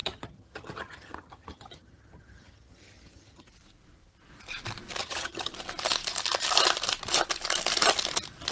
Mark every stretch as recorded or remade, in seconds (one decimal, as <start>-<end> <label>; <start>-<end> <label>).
0.0-3.5 remade; 3.5-5.0 recorded; 5.0-5.5 remade; 5.5-8.5 recorded